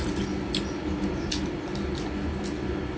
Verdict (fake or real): real